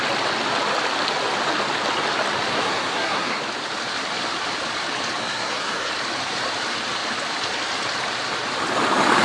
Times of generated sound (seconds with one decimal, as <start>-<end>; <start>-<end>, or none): 2.5-3.4; 5.2-5.9